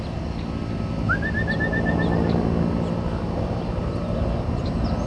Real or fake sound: real